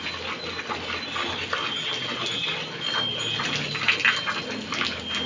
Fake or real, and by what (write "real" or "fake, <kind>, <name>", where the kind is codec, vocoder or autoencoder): real